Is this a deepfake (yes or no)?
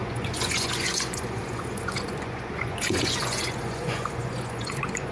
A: yes